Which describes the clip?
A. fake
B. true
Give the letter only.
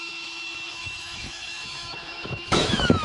A